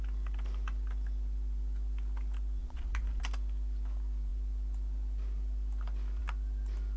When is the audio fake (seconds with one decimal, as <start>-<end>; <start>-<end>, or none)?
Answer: 2.6-3.2